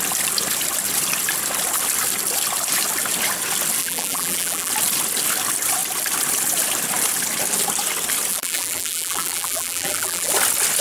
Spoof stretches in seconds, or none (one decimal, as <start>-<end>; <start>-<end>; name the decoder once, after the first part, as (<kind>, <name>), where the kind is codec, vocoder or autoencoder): 3.8-4.7 (vocoder, BigVGAN v2); 8.3-10.3